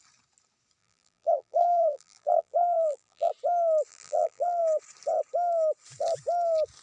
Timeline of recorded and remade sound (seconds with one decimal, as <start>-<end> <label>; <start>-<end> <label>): 0.0-0.8 recorded; 0.8-3.3 remade; 3.3-3.9 recorded; 3.9-4.6 remade; 4.6-6.8 recorded